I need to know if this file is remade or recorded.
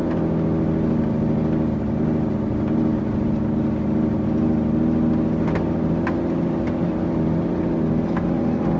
recorded